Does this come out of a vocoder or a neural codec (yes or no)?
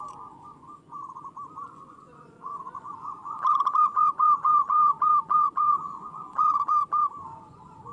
yes